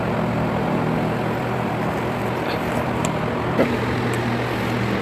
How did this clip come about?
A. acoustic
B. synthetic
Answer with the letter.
A